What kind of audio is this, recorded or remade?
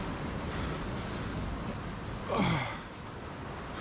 recorded